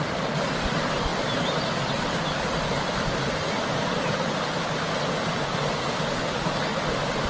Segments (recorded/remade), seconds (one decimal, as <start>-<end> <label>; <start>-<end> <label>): 0.0-6.7 recorded; 6.7-7.3 remade